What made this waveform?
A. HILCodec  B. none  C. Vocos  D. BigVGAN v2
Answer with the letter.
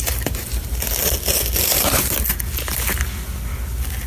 B